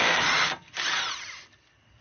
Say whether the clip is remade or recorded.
recorded